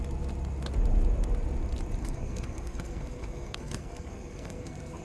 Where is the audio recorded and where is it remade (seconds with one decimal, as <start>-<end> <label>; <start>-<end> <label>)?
0.0-2.0 recorded; 2.0-5.0 remade